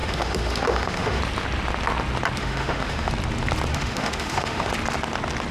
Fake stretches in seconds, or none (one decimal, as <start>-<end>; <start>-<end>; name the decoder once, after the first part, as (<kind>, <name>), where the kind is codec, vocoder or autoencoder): 0.0-1.2 (autoencoder, DAC-VAE); 2.4-3.1; 3.7-4.7